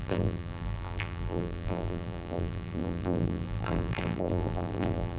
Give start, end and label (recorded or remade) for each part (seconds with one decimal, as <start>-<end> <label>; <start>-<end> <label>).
0.0-5.2 remade